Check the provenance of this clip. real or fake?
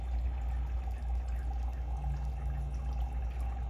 real